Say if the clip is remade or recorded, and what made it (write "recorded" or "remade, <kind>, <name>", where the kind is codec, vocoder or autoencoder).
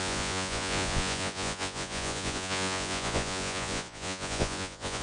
remade, vocoder, Vocos